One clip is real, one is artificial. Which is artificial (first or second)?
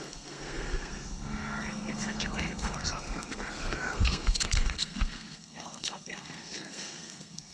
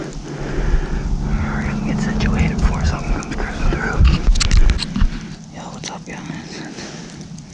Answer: first